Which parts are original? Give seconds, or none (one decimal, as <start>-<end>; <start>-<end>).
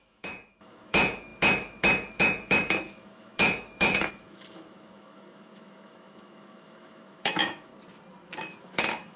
7.7-8.6